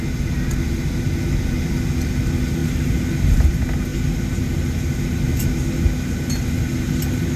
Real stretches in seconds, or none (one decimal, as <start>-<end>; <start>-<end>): 0.0-2.6; 3.5-7.4